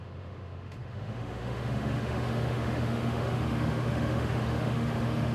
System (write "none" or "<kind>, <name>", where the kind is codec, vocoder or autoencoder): autoencoder, DAC-VAE